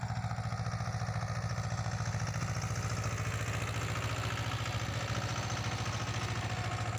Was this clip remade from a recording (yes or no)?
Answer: no